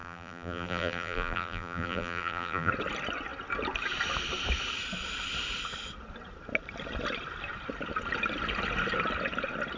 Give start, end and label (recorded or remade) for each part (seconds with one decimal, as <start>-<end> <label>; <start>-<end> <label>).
0.0-2.7 remade; 2.7-9.8 recorded